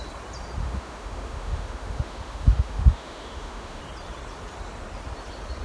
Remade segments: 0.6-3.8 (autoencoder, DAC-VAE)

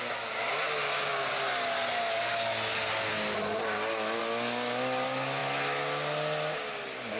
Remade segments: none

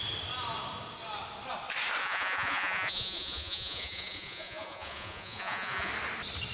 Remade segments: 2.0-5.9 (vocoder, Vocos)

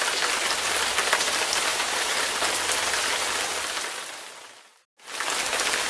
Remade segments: 1.7-2.4 (vocoder, BigVGAN v2)

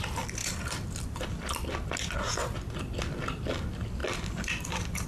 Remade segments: 0.4-1.9 (vocoder, BigVGAN v2); 4.0-5.1

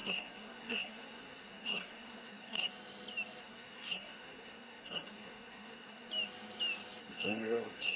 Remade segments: 0.0-2.7 (codec, SNAC); 3.4-6.1; 7.0-8.0